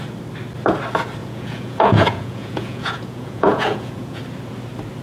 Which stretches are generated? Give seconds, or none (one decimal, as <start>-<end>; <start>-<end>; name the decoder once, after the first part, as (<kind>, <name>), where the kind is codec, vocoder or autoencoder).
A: 1.2-4.2 (vocoder, Vocos)